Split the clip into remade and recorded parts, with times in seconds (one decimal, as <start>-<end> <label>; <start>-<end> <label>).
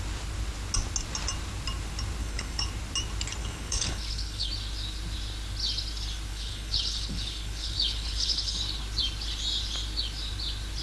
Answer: 0.0-2.2 recorded; 2.2-2.7 remade; 2.7-3.4 recorded; 3.4-4.5 remade; 4.5-6.3 recorded; 6.3-8.6 remade; 8.6-10.8 recorded